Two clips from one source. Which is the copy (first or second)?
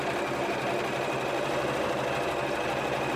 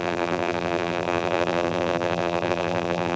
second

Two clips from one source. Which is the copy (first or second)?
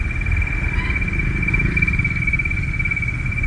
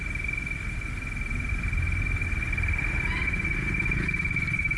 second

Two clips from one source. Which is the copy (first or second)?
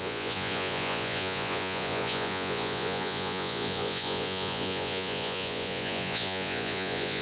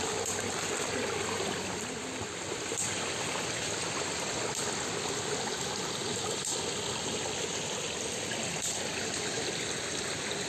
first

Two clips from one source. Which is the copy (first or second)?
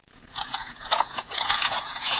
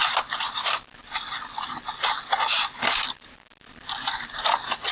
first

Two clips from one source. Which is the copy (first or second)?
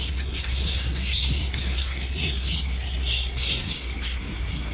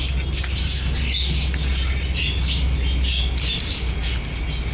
first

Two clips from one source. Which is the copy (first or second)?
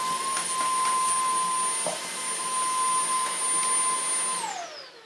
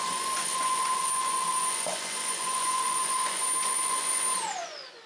second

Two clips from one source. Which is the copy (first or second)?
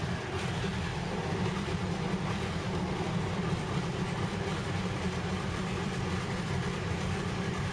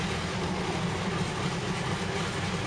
first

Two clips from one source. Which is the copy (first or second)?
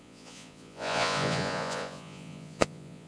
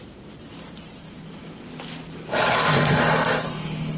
first